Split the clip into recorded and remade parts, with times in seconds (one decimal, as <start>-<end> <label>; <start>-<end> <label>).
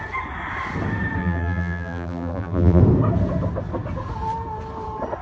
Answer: 0.0-1.2 recorded; 1.2-2.8 remade; 2.8-5.2 recorded